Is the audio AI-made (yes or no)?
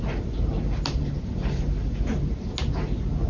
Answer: no